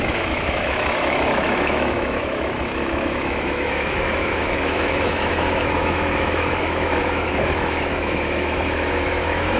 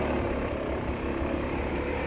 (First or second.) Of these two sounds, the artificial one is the first